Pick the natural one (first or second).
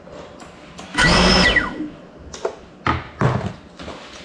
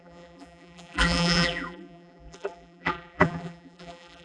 first